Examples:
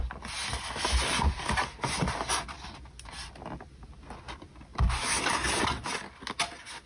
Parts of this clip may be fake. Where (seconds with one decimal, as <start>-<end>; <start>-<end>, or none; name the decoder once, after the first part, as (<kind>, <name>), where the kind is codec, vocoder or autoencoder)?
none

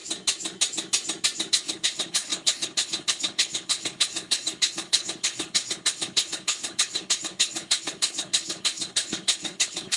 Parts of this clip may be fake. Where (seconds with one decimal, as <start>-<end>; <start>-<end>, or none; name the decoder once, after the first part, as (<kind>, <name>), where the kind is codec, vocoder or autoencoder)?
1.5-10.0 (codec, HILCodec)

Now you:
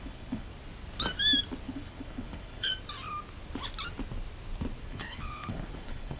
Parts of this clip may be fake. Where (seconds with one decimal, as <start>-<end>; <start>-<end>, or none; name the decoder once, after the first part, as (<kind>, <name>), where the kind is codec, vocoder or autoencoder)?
0.0-0.5 (codec, HILCodec); 1.6-2.7; 4.9-6.2

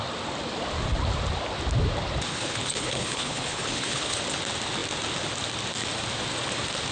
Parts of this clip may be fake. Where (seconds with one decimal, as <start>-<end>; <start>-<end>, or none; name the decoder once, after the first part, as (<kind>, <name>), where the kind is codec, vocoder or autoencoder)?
2.3-4.2 (codec, HILCodec)

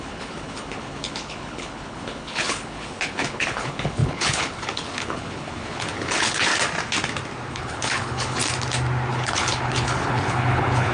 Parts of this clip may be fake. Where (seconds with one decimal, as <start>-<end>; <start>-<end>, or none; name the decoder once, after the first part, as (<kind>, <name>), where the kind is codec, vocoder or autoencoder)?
0.0-6.5 (codec, HILCodec); 7.5-8.4; 9.1-10.9

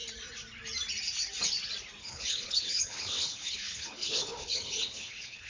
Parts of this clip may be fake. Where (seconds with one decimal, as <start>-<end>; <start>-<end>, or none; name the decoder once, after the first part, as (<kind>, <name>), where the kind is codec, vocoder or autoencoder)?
2.0-5.5 (codec, HILCodec)